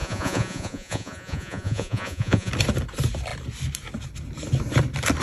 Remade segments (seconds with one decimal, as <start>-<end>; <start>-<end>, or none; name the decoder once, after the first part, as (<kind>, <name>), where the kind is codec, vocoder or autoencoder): 0.0-2.5 (vocoder, Vocos)